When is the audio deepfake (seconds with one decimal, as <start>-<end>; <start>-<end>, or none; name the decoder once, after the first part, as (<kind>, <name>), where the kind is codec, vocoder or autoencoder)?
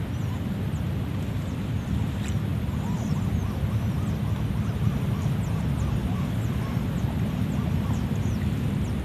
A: none